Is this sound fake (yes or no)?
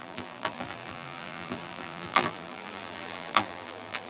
yes